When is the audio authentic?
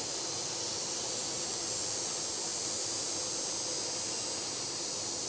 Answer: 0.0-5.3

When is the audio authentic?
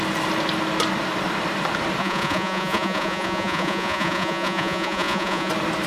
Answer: 0.0-2.0; 5.5-5.9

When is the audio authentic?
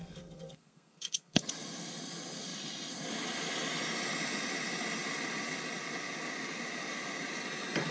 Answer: 1.4-7.9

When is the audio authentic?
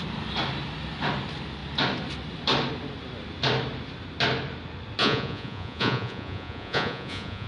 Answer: 0.0-5.0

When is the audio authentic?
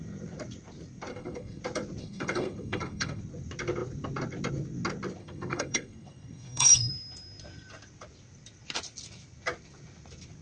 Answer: 0.0-1.1; 1.6-2.0; 3.2-5.2; 6.9-10.4